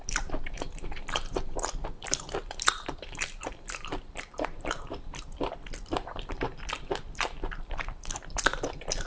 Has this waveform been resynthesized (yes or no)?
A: yes